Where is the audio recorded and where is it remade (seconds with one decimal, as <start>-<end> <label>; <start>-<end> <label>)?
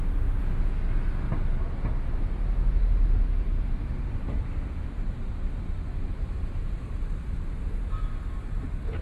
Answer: 0.0-3.9 recorded; 3.9-4.4 remade; 4.4-6.6 recorded; 6.6-9.0 remade